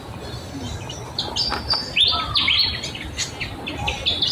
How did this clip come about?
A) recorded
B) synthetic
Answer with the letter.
A